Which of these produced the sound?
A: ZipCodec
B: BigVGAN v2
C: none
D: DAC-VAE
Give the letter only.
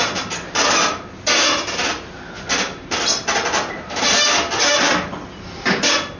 C